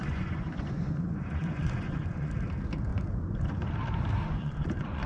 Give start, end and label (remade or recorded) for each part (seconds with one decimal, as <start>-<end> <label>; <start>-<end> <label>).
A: 0.0-2.3 remade; 2.3-2.9 recorded; 2.9-3.7 remade; 3.7-4.3 recorded; 4.3-5.1 remade